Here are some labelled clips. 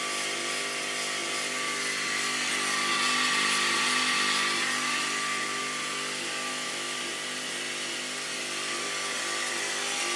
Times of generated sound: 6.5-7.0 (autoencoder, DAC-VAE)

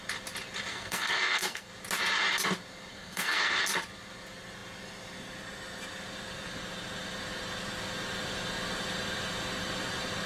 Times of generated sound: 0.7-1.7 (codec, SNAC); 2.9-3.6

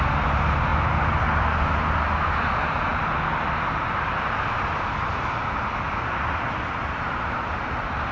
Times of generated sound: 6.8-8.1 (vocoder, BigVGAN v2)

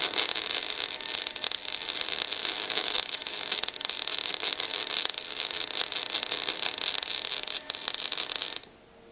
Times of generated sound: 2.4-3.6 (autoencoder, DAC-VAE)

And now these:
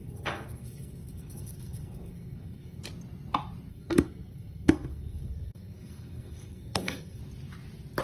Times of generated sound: 0.0-2.8 (codec, SNAC); 3.7-7.2

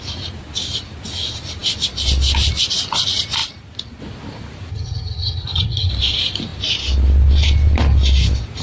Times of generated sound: 4.7-5.9 (vocoder, HiFi-GAN)

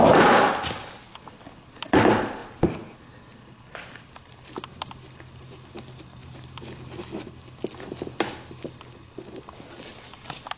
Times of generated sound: none

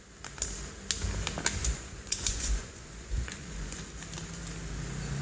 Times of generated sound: 1.6-3.8 (vocoder, Vocos)